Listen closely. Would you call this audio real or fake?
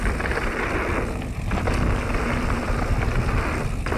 real